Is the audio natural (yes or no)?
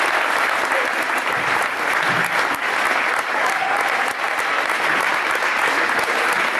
yes